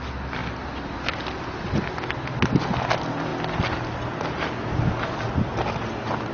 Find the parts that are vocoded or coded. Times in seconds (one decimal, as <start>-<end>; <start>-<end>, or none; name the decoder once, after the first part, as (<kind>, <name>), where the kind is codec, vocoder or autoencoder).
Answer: none